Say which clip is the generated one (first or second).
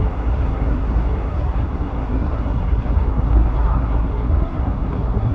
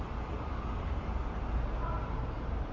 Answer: first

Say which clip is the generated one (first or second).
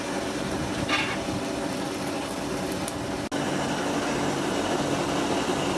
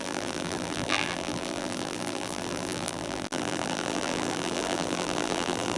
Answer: second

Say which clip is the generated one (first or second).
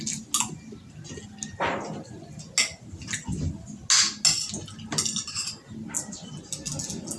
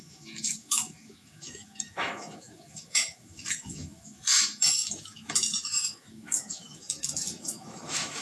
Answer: second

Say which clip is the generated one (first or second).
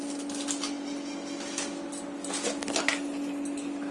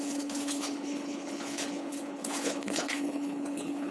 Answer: second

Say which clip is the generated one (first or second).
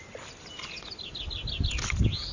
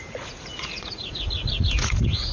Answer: second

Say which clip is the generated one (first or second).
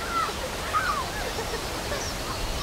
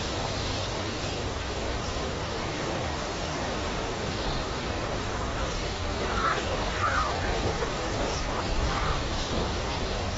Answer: second